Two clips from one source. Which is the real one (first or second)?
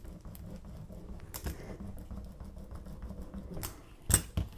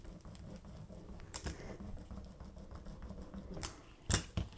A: first